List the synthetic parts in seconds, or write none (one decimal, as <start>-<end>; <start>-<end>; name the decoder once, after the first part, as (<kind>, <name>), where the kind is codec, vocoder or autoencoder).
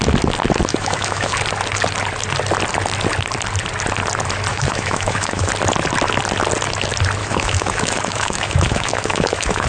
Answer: 0.7-1.4 (autoencoder, DAC-VAE); 4.5-5.5; 7.2-9.7